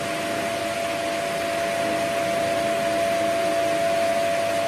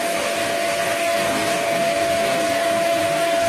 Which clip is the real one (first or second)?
first